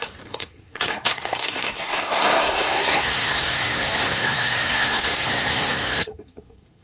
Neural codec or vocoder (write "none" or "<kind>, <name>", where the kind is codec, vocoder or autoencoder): codec, SNAC